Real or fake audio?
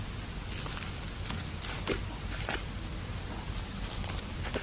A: real